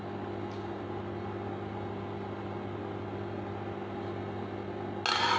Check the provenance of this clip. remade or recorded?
recorded